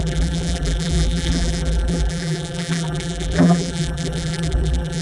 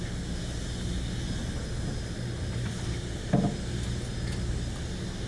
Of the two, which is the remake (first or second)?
first